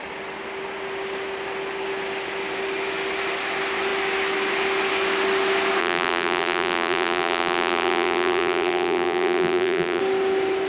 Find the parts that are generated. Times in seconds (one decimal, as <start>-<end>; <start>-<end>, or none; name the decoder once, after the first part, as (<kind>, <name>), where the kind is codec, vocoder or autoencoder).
5.8-10.0 (vocoder, BigVGAN v2)